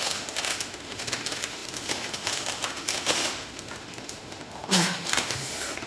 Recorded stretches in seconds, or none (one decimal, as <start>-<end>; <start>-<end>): none